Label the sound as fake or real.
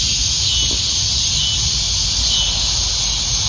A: real